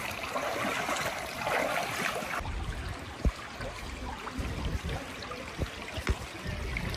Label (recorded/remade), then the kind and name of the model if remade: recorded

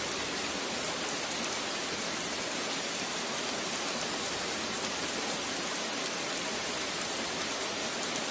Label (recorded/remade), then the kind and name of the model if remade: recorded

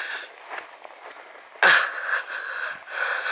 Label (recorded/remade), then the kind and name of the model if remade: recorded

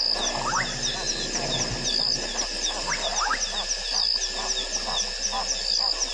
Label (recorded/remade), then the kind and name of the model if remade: recorded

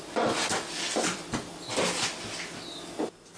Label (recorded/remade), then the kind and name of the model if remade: recorded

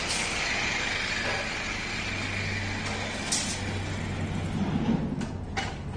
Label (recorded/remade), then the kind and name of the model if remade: recorded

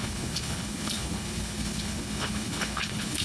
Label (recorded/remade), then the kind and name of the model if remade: remade, codec, HILCodec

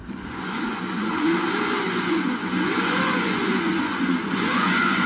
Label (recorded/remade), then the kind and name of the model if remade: remade, vocoder, Vocos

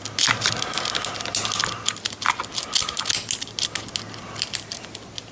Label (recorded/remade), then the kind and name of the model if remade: recorded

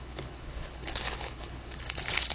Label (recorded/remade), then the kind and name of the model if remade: remade, codec, HILCodec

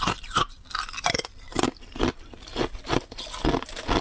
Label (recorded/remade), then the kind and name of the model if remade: recorded